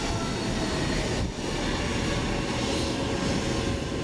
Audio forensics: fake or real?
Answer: real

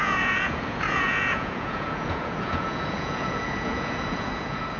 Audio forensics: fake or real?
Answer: fake